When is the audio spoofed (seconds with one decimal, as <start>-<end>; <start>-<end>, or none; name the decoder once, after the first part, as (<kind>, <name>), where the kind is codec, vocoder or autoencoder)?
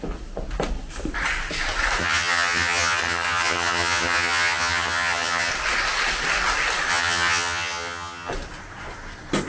2.0-5.5 (vocoder, HiFi-GAN); 6.9-8.3